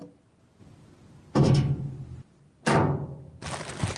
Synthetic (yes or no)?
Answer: no